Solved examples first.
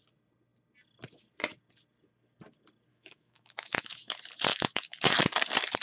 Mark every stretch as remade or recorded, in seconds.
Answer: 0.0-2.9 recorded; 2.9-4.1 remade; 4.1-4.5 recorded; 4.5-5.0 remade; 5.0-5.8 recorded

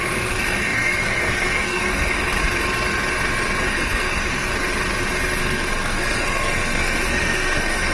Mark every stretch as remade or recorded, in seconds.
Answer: 0.0-2.4 remade; 2.4-3.7 recorded; 3.7-4.5 remade; 4.5-5.4 recorded; 5.4-7.9 remade

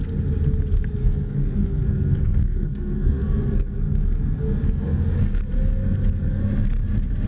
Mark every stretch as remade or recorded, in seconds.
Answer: 0.0-1.0 recorded; 1.0-5.4 remade; 5.4-7.3 recorded

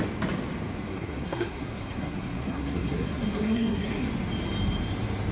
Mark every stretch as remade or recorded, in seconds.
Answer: 0.0-0.9 recorded; 0.9-4.1 remade; 4.1-5.3 recorded

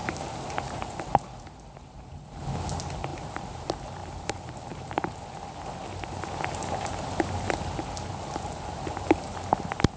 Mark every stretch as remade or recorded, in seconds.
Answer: 0.0-1.0 remade; 1.0-3.1 recorded; 3.1-3.6 remade; 3.6-4.0 recorded; 4.0-5.1 remade; 5.1-10.0 recorded